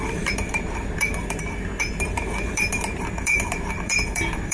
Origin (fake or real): fake